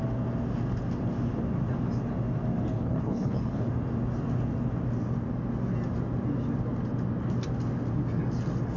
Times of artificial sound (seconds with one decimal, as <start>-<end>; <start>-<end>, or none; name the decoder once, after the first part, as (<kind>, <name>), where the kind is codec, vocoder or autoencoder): 2.7-3.7 (codec, HILCodec)